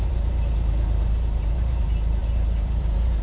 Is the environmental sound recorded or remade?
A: remade